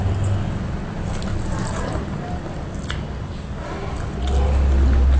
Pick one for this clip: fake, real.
real